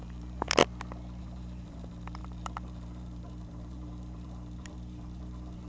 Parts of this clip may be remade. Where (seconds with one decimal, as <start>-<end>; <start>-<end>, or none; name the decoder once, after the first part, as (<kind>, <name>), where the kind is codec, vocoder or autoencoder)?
0.0-0.6 (vocoder, BigVGAN v2); 1.2-5.7